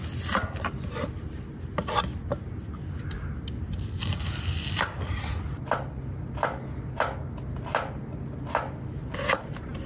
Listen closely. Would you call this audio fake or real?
real